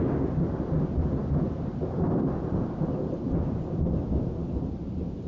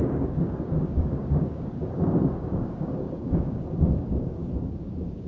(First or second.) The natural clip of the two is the first